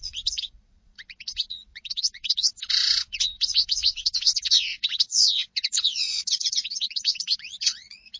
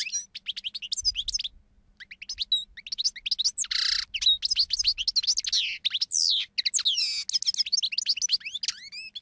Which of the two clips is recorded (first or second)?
second